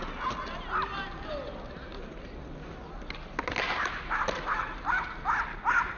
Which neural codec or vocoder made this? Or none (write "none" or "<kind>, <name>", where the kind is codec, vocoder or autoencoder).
none